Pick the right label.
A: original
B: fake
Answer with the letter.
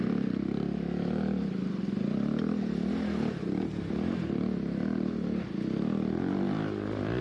A